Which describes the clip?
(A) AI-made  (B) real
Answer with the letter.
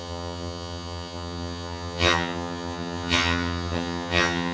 A